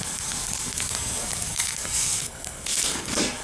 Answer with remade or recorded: remade